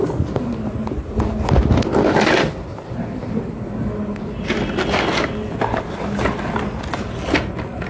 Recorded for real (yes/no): yes